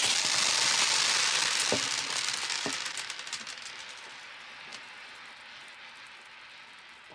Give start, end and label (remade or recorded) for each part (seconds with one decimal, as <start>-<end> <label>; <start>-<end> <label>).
0.0-7.1 recorded